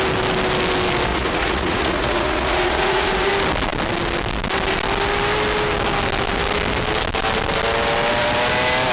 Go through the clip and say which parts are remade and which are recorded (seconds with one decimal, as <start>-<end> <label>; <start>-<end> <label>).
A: 0.0-1.1 recorded; 1.1-3.3 remade; 3.3-8.9 recorded